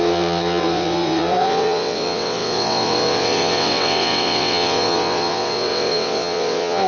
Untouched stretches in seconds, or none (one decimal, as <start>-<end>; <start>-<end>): none